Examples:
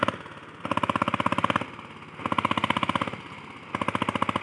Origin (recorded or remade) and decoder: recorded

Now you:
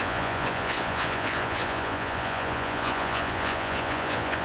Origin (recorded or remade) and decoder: remade, vocoder, Vocos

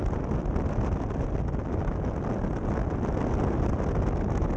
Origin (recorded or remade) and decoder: recorded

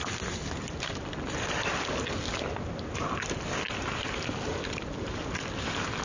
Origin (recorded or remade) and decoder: recorded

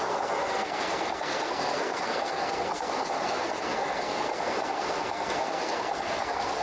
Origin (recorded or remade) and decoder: remade, codec, SNAC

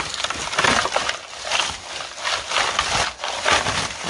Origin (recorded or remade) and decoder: recorded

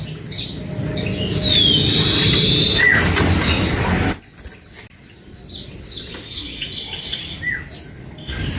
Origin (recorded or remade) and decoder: recorded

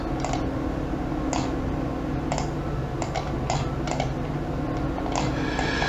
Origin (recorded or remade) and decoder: recorded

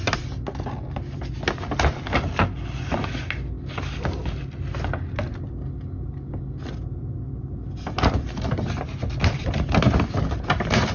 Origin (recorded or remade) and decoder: recorded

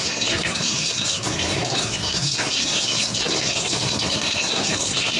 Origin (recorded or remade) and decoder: remade, codec, SNAC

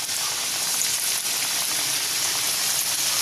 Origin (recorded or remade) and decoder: recorded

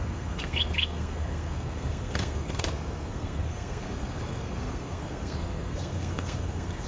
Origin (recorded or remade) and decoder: remade, codec, SNAC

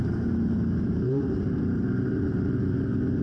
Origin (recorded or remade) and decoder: remade, vocoder, BigVGAN v2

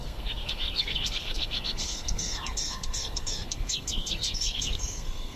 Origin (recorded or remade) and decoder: remade, codec, SNAC